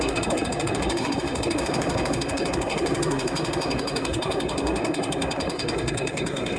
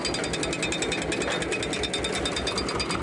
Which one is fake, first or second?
first